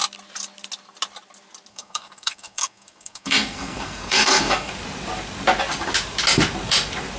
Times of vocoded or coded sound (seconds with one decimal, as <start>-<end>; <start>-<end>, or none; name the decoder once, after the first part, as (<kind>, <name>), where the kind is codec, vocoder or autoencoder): 1.7-4.7 (codec, SNAC)